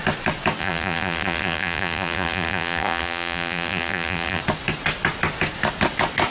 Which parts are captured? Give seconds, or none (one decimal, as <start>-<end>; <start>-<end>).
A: 0.0-0.6; 4.4-6.3